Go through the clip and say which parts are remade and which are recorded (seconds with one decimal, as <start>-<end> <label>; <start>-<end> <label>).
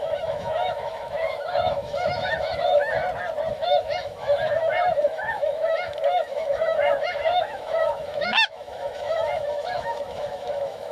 0.0-3.0 remade; 3.0-3.5 recorded; 3.5-10.9 remade